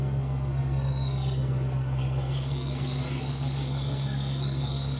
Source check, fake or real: fake